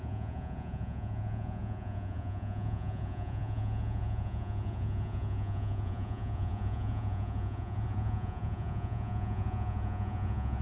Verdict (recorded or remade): remade